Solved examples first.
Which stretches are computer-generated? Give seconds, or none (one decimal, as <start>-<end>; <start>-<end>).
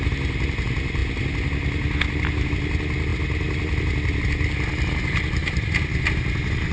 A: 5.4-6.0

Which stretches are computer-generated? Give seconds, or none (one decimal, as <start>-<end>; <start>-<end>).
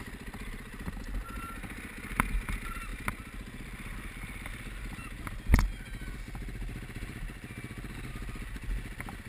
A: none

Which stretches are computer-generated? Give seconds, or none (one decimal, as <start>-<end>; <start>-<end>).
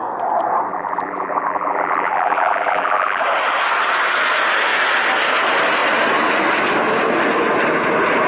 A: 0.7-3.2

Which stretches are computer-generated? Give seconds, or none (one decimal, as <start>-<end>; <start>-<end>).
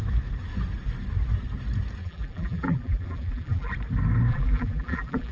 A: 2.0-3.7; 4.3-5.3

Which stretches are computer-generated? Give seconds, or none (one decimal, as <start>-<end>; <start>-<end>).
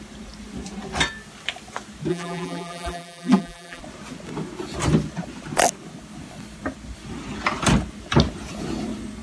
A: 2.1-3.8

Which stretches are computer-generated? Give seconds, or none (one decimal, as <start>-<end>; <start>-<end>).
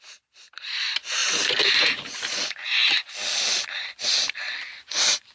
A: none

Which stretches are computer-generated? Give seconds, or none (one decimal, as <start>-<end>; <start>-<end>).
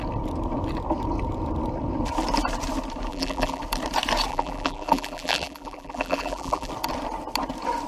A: 3.1-3.6; 4.3-6.7